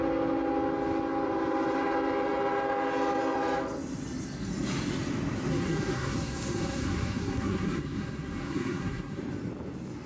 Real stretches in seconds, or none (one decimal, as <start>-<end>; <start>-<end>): 0.0-5.5; 9.2-10.1